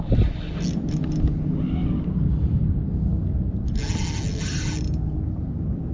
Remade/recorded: recorded